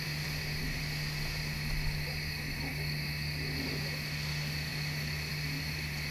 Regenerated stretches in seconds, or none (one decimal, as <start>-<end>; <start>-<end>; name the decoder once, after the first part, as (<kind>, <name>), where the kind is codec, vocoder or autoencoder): none